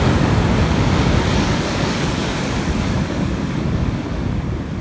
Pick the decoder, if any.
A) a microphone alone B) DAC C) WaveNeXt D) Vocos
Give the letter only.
B